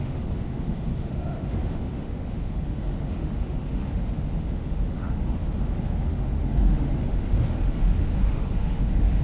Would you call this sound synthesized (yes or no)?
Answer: yes